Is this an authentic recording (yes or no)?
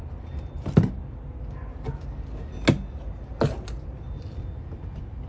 yes